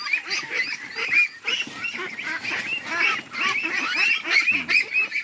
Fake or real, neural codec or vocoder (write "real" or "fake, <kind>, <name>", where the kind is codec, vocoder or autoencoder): real